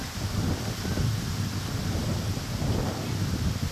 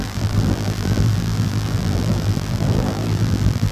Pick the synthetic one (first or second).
second